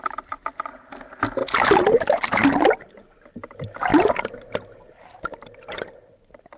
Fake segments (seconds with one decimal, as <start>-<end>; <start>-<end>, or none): none